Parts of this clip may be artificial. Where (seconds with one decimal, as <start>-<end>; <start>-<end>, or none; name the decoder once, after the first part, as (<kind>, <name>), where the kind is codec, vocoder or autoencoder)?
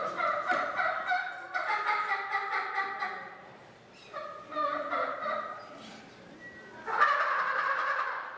none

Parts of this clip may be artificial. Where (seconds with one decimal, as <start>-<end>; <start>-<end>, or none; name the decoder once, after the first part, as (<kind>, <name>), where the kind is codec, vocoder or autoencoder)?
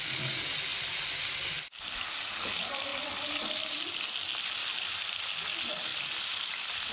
0.7-1.7 (vocoder, BigVGAN v2); 2.9-4.1; 4.6-5.2; 5.9-6.9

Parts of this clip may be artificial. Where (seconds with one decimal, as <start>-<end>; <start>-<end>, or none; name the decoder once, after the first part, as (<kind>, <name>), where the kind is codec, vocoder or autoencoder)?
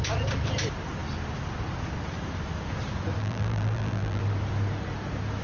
3.2-4.2 (vocoder, BigVGAN v2)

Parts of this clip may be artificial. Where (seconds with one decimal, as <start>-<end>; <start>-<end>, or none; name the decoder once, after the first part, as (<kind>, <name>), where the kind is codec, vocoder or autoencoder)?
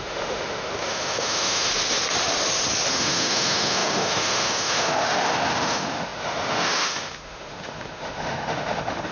0.0-1.7 (autoencoder, DAC-VAE); 2.9-9.1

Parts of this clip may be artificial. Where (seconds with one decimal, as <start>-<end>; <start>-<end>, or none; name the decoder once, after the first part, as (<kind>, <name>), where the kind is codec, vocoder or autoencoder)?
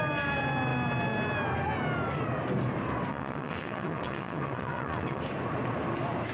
3.1-5.2 (vocoder, WaveNeXt)